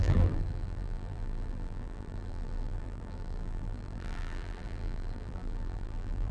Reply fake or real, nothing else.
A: fake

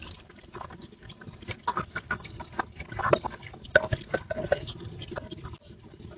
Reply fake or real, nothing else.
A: real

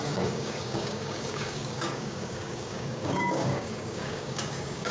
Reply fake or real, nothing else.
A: fake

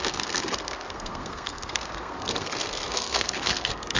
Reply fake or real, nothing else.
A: fake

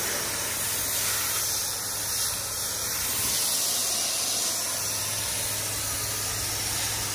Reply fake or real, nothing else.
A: real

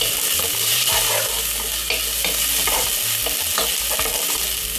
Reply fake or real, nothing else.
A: real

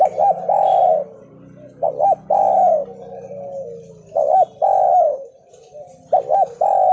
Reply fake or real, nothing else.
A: real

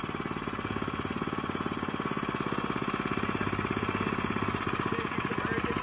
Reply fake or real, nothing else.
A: real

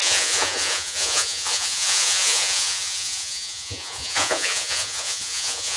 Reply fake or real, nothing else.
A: fake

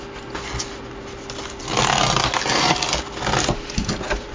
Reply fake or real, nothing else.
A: real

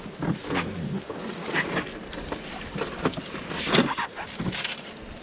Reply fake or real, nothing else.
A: real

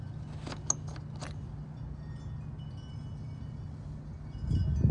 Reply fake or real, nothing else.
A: real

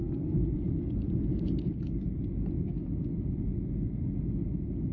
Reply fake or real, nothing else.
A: real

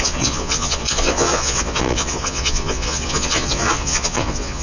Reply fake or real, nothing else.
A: fake